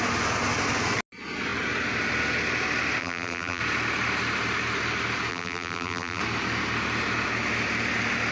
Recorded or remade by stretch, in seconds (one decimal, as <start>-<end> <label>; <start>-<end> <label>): 0.0-3.0 recorded; 3.0-3.6 remade; 3.6-5.3 recorded; 5.3-6.2 remade; 6.2-8.3 recorded